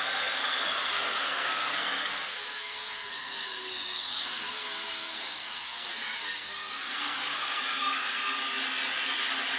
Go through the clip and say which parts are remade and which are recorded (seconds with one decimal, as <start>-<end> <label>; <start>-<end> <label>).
0.0-8.4 remade; 8.4-9.6 recorded